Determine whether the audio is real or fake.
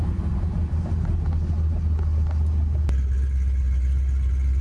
real